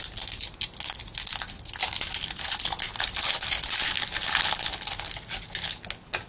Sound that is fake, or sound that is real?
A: real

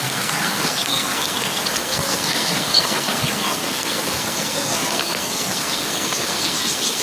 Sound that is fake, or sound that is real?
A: fake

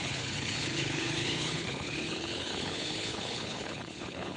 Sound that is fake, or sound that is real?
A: fake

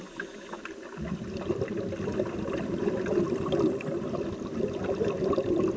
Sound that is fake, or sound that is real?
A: real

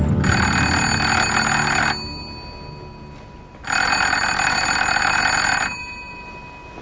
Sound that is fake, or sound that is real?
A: real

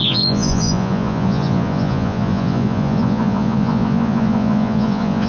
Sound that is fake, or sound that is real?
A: fake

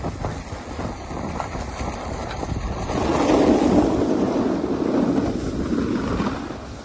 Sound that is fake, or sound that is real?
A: real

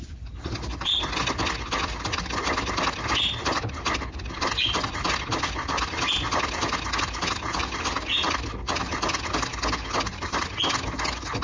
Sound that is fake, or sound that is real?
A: real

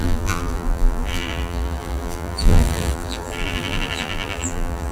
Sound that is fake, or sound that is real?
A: fake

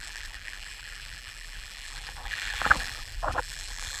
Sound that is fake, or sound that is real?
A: fake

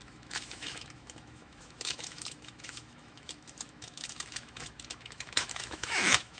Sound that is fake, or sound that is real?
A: fake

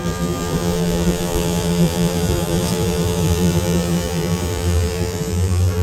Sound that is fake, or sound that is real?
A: fake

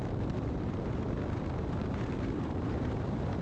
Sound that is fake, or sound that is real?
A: fake